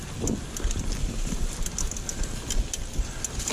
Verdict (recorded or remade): recorded